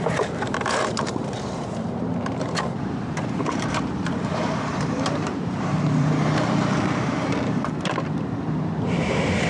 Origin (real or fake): fake